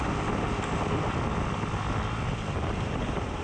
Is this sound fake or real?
real